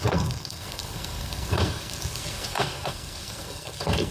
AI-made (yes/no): yes